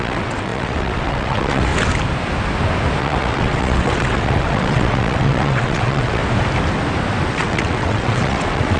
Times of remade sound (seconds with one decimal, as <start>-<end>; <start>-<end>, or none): 0.0-1.7; 3.0-6.2; 7.3-8.8